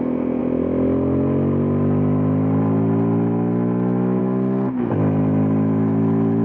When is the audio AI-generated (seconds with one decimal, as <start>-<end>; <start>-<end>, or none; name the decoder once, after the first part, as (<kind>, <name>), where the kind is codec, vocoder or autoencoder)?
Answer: none